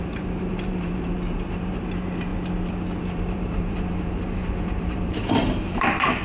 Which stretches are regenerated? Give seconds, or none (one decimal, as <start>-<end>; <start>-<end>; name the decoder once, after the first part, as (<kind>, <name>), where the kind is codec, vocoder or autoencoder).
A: 0.0-2.3 (vocoder, BigVGAN v2); 3.0-6.2